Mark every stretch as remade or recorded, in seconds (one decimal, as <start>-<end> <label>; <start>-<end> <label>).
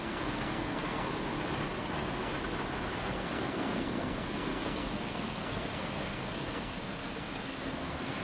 0.0-1.1 remade; 1.1-1.8 recorded; 1.8-2.3 remade; 2.3-2.9 recorded; 2.9-8.2 remade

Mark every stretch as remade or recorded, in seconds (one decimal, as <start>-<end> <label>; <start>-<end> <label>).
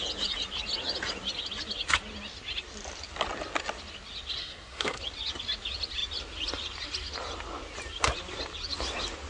0.0-4.4 recorded; 4.4-5.0 remade; 5.0-9.3 recorded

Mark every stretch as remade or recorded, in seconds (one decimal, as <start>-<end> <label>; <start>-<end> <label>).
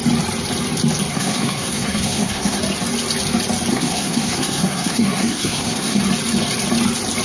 0.0-1.1 recorded; 1.1-2.6 remade; 2.6-3.7 recorded; 3.7-6.0 remade; 6.0-7.2 recorded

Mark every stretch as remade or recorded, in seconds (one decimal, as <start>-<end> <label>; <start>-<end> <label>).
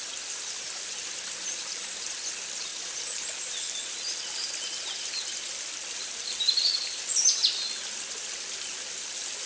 0.0-9.5 recorded